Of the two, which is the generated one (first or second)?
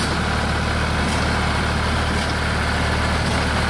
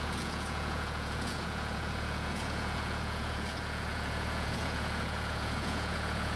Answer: second